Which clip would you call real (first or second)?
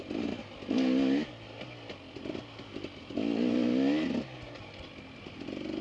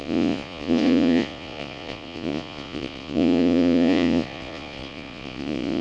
first